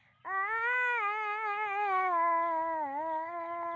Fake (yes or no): no